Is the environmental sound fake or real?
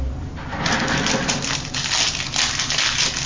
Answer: real